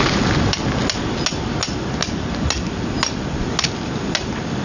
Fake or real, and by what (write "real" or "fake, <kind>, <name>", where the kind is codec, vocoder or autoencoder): real